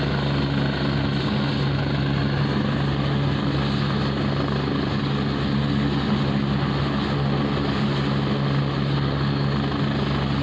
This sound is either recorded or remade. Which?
recorded